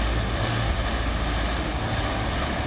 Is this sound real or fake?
real